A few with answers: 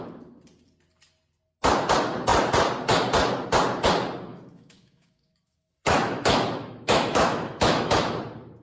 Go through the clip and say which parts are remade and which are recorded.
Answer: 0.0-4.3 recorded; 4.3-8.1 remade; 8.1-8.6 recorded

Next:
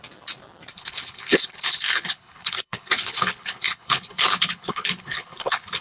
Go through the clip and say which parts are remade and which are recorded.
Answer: 0.0-0.7 recorded; 0.7-5.8 remade

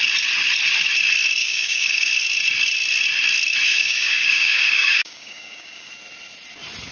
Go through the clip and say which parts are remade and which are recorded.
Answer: 0.0-1.4 recorded; 1.4-2.1 remade; 2.1-3.7 recorded; 3.7-5.9 remade; 5.9-6.9 recorded

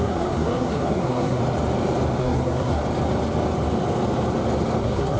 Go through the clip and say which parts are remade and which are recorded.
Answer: 0.0-1.4 remade; 1.4-2.2 recorded; 2.2-2.8 remade; 2.8-4.8 recorded; 4.8-5.2 remade